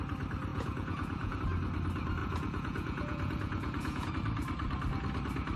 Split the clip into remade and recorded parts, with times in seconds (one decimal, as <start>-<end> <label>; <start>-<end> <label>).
0.0-0.5 recorded; 0.5-1.4 remade; 1.4-2.2 recorded; 2.2-4.1 remade; 4.1-5.6 recorded